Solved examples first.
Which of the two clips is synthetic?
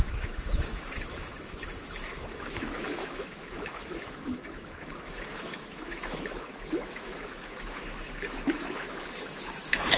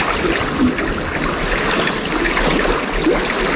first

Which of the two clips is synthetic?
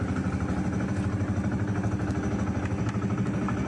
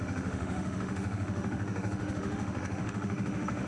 second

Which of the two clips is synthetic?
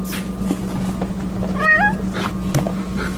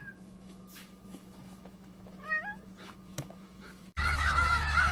second